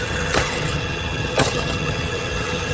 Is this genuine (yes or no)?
no